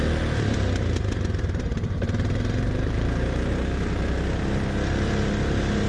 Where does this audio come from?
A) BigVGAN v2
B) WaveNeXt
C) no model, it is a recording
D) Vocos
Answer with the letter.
C